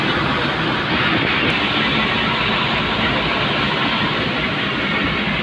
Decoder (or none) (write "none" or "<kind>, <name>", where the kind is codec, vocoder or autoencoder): none